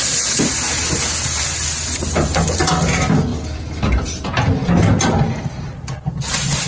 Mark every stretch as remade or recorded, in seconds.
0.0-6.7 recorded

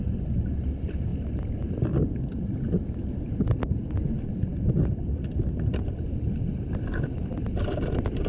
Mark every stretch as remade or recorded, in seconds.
0.0-8.3 recorded

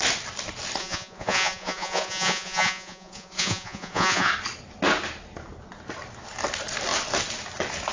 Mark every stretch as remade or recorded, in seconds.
0.0-0.8 recorded; 0.8-4.3 remade; 4.3-7.9 recorded

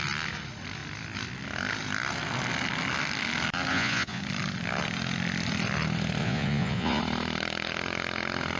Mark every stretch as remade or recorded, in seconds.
0.0-3.7 recorded; 3.7-4.2 remade; 4.2-6.2 recorded; 6.2-7.0 remade; 7.0-8.6 recorded

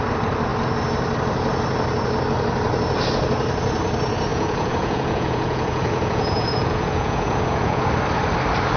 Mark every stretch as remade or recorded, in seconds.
0.0-4.3 recorded; 4.3-7.9 remade; 7.9-8.8 recorded

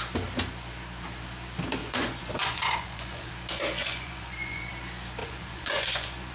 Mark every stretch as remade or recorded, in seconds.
0.0-1.8 recorded; 1.8-3.3 remade; 3.3-3.8 recorded; 3.8-4.7 remade; 4.7-5.2 recorded; 5.2-6.3 remade